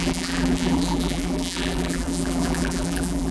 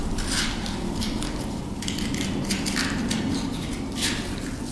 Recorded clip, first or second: second